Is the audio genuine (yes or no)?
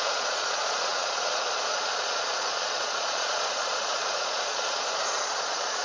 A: no